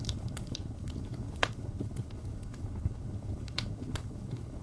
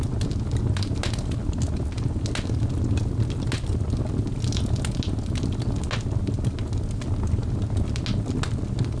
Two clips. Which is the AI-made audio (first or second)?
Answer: first